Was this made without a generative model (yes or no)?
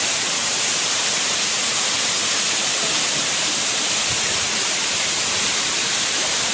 no